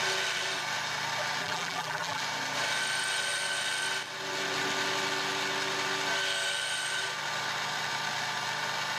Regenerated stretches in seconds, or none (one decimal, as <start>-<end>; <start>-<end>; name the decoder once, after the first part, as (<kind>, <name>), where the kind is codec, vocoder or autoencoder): 1.4-2.2 (vocoder, BigVGAN v2)

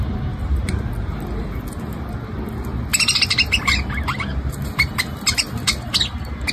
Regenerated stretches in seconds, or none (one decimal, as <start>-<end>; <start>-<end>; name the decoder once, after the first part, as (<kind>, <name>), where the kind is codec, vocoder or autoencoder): none

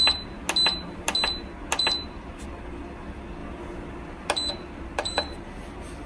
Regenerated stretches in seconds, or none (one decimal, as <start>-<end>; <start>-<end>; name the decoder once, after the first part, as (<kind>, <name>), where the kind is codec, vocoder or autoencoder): 4.9-5.5 (vocoder, BigVGAN v2)

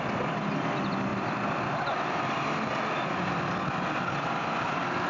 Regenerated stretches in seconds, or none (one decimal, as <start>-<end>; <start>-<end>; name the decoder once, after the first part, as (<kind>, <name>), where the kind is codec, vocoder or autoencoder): none